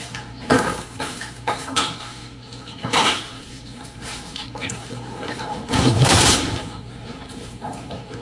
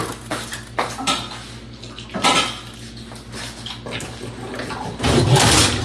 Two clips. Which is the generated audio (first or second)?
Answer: first